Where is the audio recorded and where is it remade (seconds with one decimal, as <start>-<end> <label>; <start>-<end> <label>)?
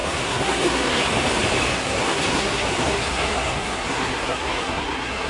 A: 0.0-1.1 remade; 1.1-1.7 recorded; 1.7-5.3 remade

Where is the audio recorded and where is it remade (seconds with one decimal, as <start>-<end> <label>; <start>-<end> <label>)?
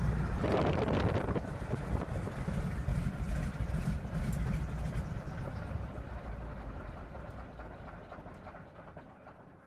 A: 0.0-9.7 recorded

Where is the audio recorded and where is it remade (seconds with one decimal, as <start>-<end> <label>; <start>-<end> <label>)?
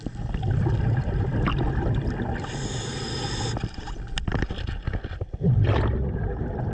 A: 0.0-6.7 recorded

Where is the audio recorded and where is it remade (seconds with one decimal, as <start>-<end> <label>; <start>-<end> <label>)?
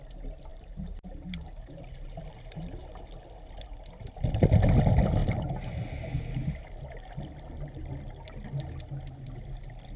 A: 0.0-10.0 recorded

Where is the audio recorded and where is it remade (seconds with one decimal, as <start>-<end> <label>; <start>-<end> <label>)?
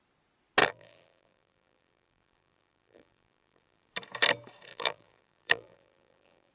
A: 0.0-0.6 recorded; 0.6-3.9 remade; 3.9-4.7 recorded; 4.7-6.5 remade